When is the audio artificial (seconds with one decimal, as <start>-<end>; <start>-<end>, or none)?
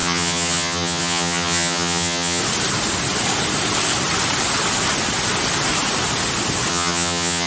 0.0-2.4; 6.7-7.5